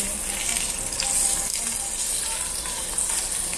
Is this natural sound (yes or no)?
yes